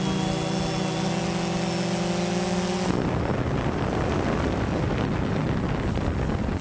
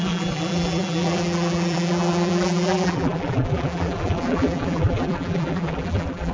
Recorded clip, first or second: first